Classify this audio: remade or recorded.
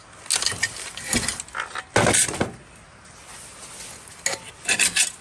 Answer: recorded